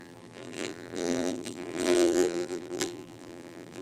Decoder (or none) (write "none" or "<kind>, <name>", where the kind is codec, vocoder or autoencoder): vocoder, BigVGAN v2